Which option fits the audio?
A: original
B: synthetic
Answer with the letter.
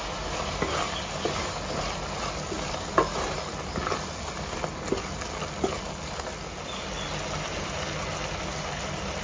A